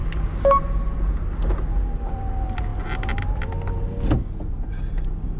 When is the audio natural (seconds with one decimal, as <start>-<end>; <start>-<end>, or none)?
0.0-5.4